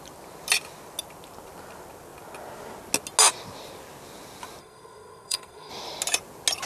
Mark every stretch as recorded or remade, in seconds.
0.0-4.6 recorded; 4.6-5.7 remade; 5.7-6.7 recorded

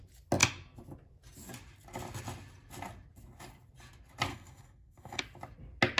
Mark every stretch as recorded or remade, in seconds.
0.0-4.3 recorded; 4.3-5.2 remade; 5.2-6.0 recorded